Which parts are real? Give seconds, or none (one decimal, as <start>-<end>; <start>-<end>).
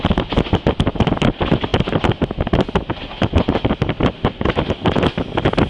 0.0-5.7